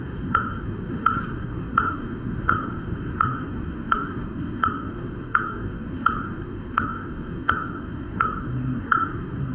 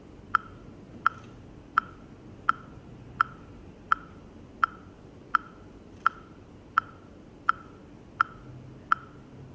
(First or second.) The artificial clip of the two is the first